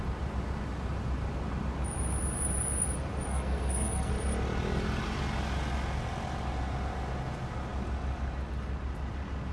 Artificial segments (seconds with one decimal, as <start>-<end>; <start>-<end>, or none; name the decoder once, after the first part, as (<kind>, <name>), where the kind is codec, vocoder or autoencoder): 3.3-4.1 (codec, SNAC)